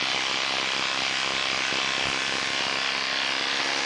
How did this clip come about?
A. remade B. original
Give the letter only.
B